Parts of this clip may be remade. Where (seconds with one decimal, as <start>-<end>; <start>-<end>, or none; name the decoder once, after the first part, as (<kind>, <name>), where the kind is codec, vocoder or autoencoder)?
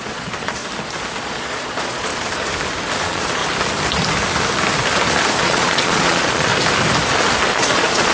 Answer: 0.0-0.6 (vocoder, Vocos); 1.2-2.1; 3.0-3.4; 5.4-6.5; 7.5-8.1